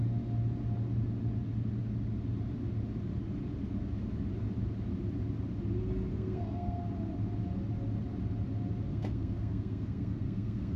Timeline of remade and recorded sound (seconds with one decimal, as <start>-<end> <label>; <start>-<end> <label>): 0.0-6.1 recorded; 6.1-6.8 remade; 6.8-8.9 recorded; 8.9-10.8 remade